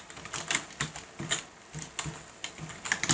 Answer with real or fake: real